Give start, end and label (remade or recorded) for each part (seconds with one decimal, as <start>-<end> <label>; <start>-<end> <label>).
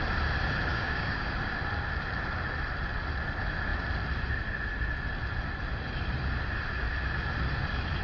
0.0-0.7 recorded; 0.7-1.3 remade; 1.3-8.0 recorded